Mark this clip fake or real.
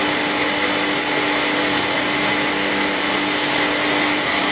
real